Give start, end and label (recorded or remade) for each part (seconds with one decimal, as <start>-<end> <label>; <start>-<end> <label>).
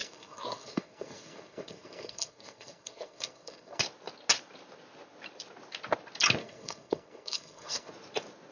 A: 0.0-3.8 remade; 3.8-6.4 recorded; 6.4-7.9 remade; 7.9-8.5 recorded